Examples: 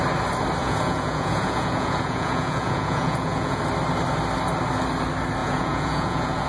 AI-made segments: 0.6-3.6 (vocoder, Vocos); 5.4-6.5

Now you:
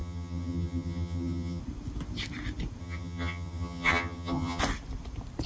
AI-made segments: 0.0-1.6 (vocoder, HiFi-GAN); 2.8-4.6

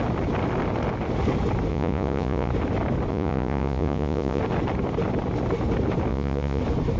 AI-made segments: 1.7-2.5 (vocoder, Vocos); 3.1-4.4; 6.1-6.6

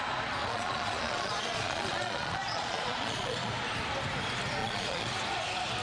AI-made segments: 0.4-3.5 (vocoder, Vocos); 4.6-5.1